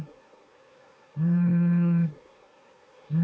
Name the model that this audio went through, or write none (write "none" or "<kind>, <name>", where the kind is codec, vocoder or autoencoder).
codec, SNAC